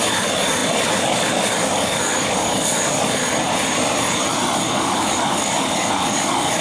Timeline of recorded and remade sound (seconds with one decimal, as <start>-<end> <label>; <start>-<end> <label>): 0.0-3.2 remade; 3.2-4.6 recorded; 4.6-6.6 remade